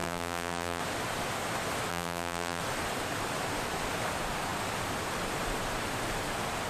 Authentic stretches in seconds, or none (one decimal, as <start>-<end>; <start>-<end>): 0.8-1.9; 2.6-6.7